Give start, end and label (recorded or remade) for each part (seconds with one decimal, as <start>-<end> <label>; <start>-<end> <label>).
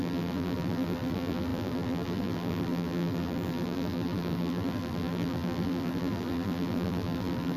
0.0-7.6 remade